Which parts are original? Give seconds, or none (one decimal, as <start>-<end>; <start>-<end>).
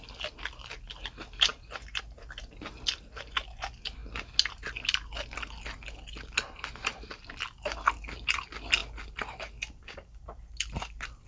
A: 0.0-11.3